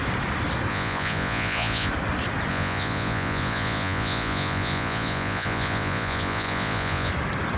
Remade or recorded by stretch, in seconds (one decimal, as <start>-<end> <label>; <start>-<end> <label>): 0.0-0.7 recorded; 0.7-1.9 remade; 1.9-2.5 recorded; 2.5-7.1 remade; 7.1-7.6 recorded

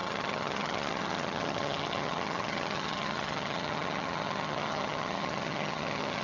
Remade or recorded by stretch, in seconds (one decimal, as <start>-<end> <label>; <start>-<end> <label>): 0.0-6.2 remade

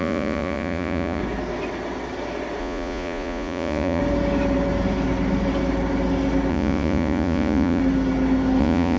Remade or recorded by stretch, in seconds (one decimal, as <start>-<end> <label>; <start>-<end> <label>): 0.0-1.2 remade; 1.2-2.6 recorded; 2.6-4.0 remade; 4.0-6.5 recorded; 6.5-7.8 remade; 7.8-8.6 recorded; 8.6-9.0 remade

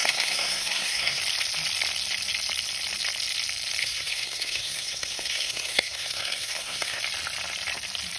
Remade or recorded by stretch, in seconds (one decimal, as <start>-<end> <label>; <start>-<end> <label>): 0.0-1.2 remade; 1.2-3.8 recorded; 3.8-7.0 remade; 7.0-8.2 recorded

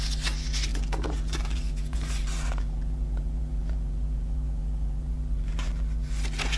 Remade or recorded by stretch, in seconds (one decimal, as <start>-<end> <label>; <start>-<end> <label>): 0.0-6.6 remade

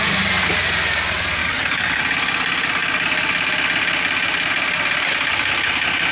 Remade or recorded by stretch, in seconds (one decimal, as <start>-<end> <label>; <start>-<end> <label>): 0.0-1.4 recorded; 1.4-2.0 remade; 2.0-6.1 recorded

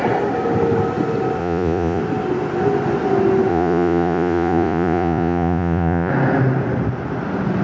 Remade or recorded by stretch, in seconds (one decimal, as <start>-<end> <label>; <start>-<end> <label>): 0.0-1.4 recorded; 1.4-2.0 remade; 2.0-3.5 recorded; 3.5-6.1 remade; 6.1-7.6 recorded